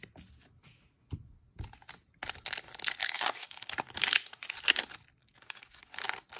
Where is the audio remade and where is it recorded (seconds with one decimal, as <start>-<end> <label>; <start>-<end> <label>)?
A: 0.0-3.0 recorded; 3.0-3.7 remade; 3.7-5.2 recorded; 5.2-5.8 remade; 5.8-6.4 recorded